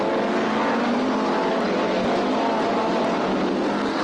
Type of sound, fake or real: real